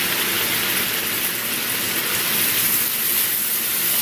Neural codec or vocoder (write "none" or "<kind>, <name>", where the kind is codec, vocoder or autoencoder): none